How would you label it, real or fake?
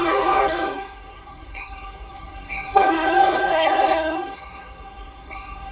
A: fake